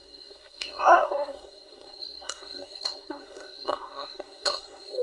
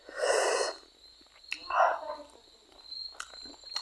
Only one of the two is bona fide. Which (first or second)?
second